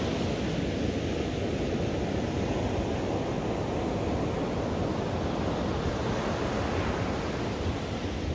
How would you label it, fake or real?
real